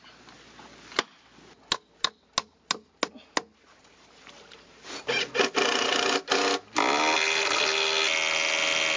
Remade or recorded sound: recorded